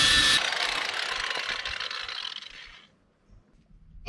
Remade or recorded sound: recorded